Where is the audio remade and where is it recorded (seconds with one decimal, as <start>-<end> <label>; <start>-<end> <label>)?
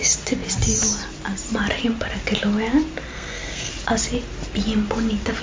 0.0-3.1 recorded; 3.1-3.7 remade; 3.7-5.4 recorded